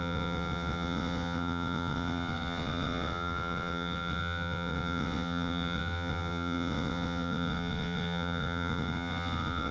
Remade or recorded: remade